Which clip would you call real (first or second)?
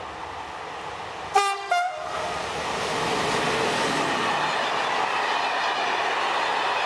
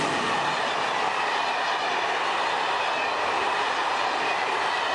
first